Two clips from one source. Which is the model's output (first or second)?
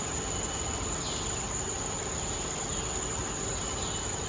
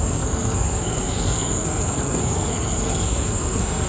second